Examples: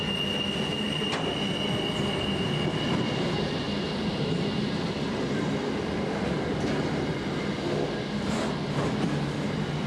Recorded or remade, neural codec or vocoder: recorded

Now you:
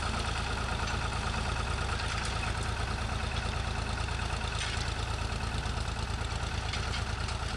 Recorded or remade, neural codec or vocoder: recorded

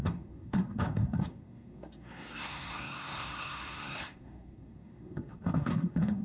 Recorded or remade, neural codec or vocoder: remade, codec, SNAC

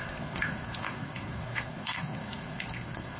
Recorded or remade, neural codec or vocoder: remade, codec, SNAC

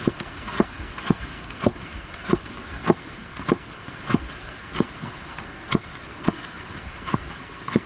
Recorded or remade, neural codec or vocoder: remade, codec, SNAC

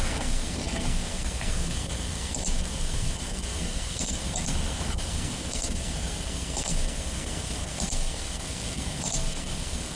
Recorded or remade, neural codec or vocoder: remade, codec, SNAC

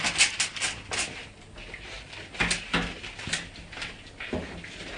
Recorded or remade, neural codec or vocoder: recorded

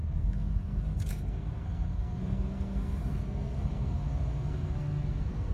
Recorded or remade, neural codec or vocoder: remade, codec, SNAC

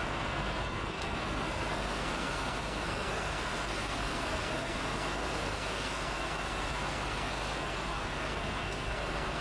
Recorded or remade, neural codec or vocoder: remade, codec, SNAC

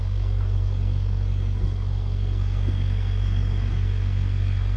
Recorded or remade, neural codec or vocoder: remade, codec, SNAC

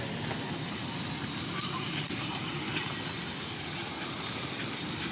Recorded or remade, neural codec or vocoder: recorded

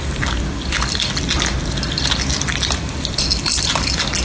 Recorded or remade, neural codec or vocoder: recorded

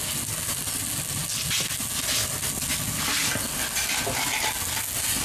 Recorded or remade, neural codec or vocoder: recorded